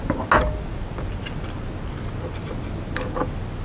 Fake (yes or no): no